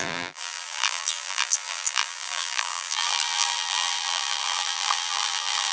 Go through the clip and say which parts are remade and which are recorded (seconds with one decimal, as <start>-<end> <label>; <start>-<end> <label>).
0.0-5.7 remade